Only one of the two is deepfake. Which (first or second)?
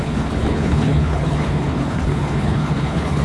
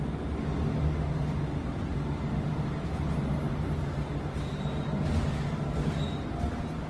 first